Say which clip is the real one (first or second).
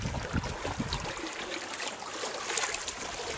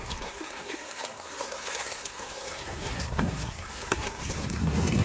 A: first